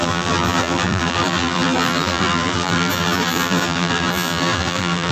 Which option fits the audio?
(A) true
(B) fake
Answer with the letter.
B